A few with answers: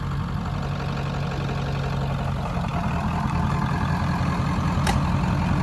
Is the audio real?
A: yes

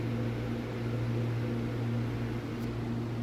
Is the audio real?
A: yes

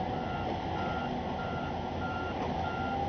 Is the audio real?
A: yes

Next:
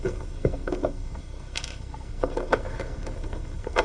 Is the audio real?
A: no